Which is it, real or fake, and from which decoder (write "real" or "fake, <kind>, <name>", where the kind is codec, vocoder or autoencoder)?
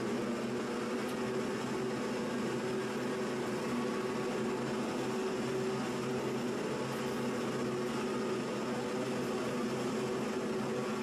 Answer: real